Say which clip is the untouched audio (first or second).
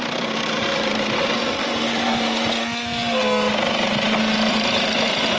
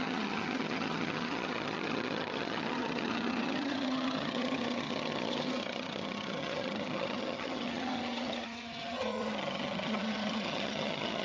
first